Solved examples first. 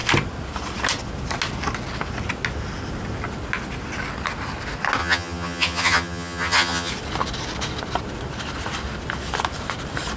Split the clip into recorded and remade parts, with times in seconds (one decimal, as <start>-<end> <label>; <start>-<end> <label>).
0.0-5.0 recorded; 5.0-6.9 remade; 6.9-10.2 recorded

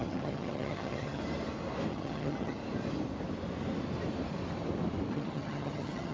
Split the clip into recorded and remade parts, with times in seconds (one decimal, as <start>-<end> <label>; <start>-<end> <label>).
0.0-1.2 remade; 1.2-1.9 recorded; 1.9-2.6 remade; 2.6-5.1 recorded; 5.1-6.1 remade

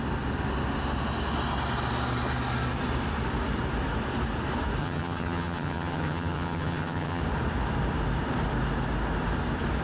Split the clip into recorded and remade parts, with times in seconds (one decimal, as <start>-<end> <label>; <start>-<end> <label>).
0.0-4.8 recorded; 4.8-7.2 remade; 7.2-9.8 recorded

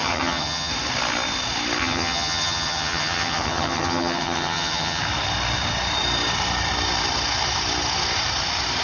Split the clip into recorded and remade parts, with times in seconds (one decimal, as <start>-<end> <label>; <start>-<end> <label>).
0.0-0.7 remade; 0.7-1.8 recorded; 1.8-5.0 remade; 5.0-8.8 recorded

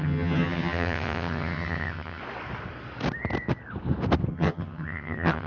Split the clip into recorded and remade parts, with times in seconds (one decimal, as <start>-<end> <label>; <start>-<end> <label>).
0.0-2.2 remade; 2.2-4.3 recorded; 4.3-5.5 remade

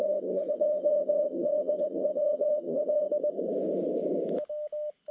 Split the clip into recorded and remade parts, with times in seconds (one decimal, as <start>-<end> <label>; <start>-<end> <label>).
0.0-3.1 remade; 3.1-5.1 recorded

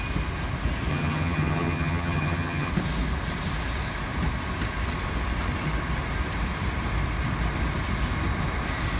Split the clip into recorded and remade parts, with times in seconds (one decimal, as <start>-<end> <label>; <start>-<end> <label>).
0.0-0.9 recorded; 0.9-2.7 remade; 2.7-9.0 recorded

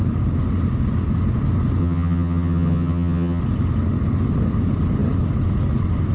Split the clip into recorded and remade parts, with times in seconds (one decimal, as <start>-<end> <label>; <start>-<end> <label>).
0.0-1.8 recorded; 1.8-3.4 remade; 3.4-6.1 recorded